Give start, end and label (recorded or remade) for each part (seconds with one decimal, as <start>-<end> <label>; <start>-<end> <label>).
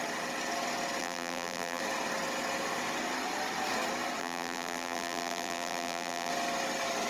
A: 0.0-1.0 recorded; 1.0-1.8 remade; 1.8-4.2 recorded; 4.2-6.3 remade; 6.3-7.1 recorded